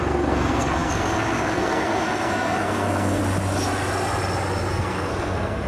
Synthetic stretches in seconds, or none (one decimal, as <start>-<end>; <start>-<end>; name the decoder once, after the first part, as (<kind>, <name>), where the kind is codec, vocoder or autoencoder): 0.0-3.2 (codec, SNAC); 4.7-5.7